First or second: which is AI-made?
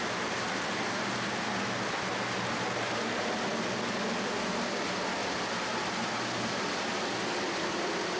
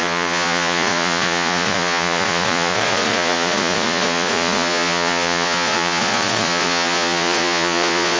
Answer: second